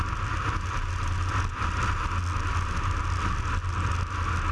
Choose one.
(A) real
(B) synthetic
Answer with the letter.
A